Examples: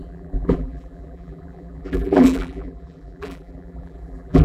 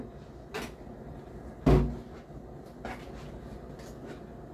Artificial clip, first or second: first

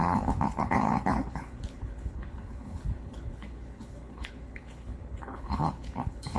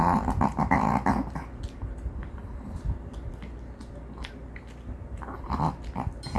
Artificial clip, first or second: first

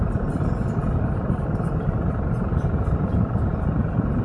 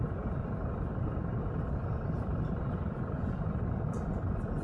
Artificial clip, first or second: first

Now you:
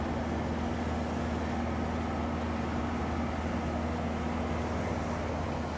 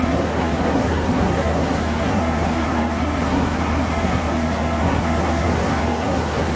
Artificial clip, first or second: second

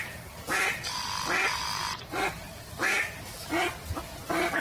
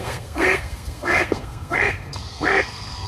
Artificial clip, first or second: second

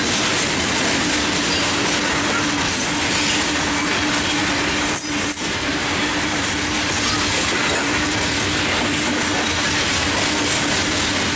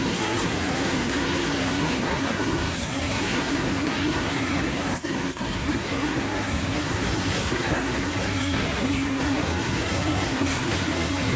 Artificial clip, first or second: second